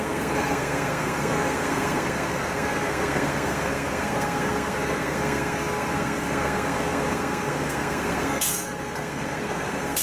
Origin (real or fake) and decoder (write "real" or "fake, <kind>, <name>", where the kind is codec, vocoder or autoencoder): fake, codec, SNAC